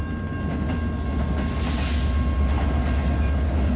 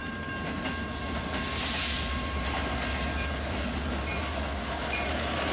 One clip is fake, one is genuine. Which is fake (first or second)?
second